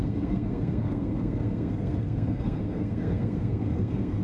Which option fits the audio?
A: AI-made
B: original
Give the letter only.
A